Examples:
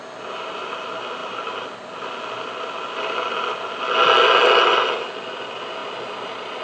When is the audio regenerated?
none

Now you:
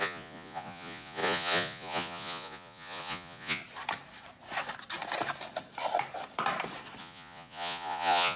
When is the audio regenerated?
0.0-3.6; 7.0-8.4